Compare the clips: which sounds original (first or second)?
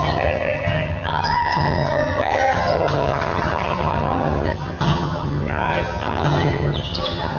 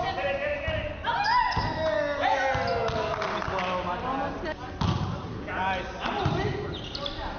second